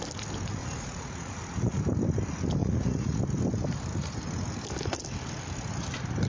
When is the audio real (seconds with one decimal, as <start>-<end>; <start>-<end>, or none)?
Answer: 0.0-0.6; 1.8-2.6; 3.2-6.3